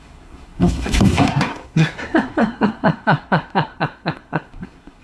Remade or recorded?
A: remade